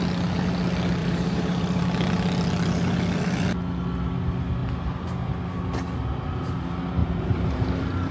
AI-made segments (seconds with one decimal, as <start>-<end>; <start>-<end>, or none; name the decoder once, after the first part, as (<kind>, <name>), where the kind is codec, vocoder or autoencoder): 1.0-1.8 (vocoder, BigVGAN v2); 7.0-8.1